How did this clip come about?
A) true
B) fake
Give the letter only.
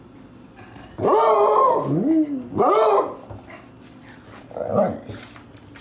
A